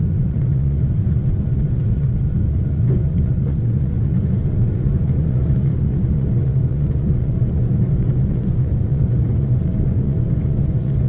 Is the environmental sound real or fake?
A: fake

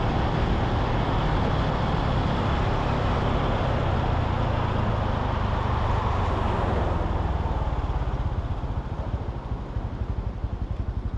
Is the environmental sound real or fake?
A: real